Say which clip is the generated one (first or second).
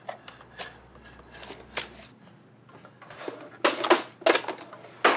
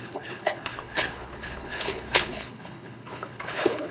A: second